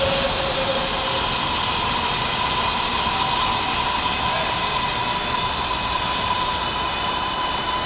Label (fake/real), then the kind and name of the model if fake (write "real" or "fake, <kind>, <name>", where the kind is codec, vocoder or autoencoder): real